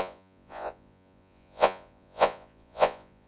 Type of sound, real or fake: fake